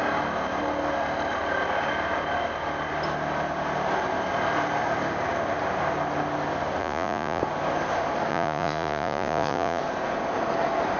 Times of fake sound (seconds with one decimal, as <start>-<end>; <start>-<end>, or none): 6.8-7.4; 8.3-9.8